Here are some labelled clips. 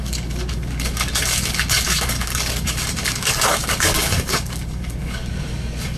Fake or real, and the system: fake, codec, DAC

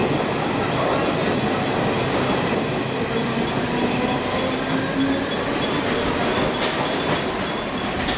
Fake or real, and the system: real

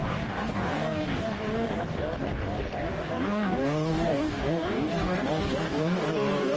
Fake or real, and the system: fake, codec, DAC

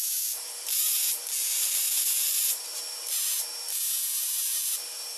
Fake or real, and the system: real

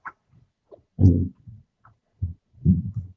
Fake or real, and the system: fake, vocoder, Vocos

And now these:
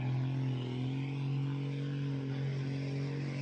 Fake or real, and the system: real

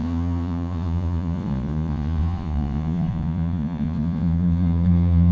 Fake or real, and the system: fake, vocoder, Vocos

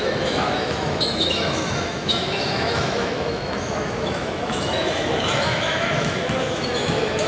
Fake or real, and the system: fake, autoencoder, DAC-VAE